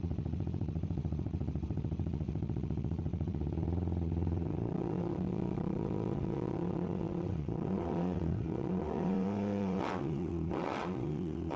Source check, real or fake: fake